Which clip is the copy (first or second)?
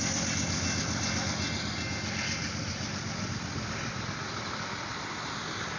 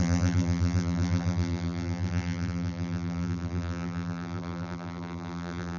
second